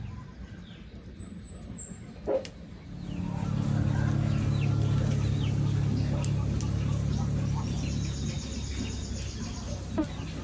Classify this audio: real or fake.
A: real